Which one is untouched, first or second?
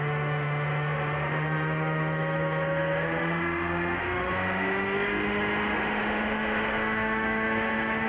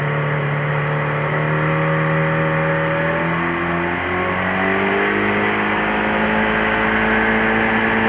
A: second